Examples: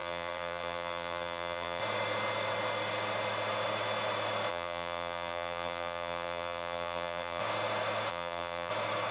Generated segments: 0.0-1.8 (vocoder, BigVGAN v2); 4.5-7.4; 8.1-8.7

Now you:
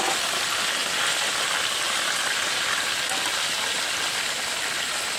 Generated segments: none

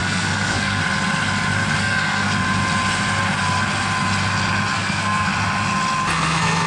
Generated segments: 0.0-0.8 (codec, SNAC); 1.8-2.3; 4.7-5.3; 6.1-6.7

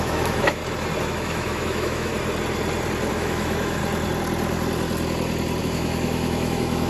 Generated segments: 0.0-0.6 (autoencoder, DAC-VAE); 1.1-2.1; 3.1-3.8; 5.6-6.9

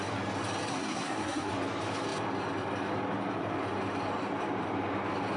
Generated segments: 0.7-1.5 (codec, SNAC)